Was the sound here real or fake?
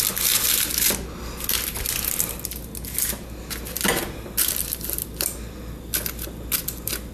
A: real